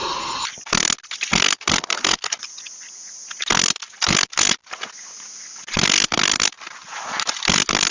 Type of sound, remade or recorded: recorded